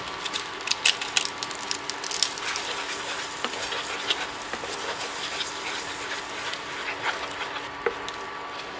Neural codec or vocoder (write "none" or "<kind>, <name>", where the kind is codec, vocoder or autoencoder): none